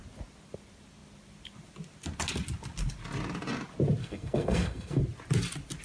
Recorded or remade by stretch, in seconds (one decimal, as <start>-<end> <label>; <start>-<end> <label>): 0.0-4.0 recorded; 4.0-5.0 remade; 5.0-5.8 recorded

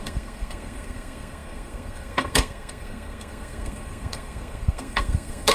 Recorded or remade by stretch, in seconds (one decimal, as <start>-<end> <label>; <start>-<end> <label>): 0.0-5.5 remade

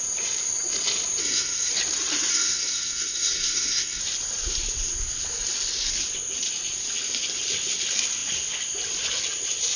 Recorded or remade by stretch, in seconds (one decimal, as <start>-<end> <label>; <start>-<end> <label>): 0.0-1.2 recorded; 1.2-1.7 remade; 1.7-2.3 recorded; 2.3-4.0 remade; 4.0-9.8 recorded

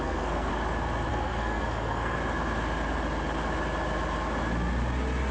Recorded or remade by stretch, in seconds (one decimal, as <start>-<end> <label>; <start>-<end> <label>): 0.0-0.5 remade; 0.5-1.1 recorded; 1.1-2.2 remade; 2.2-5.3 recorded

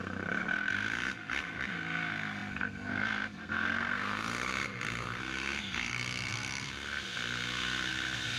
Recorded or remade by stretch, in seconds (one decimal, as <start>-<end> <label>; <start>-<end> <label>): 0.0-8.4 remade

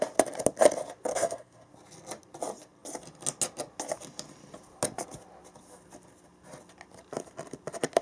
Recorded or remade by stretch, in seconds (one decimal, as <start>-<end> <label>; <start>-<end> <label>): 0.0-1.1 recorded; 1.1-1.7 remade; 1.7-8.0 recorded